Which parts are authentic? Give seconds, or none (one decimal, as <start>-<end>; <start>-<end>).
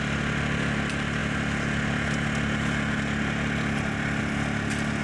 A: 0.0-5.0